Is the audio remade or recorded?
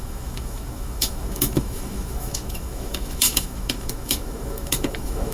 remade